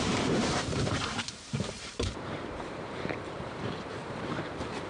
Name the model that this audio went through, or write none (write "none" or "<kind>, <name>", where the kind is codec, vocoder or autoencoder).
vocoder, BigVGAN v2